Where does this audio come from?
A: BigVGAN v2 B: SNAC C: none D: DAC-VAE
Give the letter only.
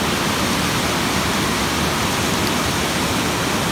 C